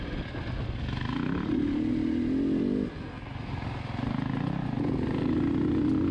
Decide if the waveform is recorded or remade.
recorded